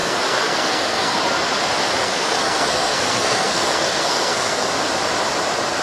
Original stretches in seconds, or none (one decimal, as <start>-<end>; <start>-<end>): 1.2-2.0; 4.7-5.8